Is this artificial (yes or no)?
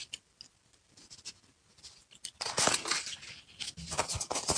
no